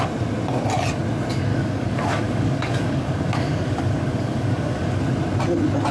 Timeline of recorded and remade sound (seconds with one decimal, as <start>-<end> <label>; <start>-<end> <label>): 0.0-1.5 recorded; 1.5-5.0 remade; 5.0-5.9 recorded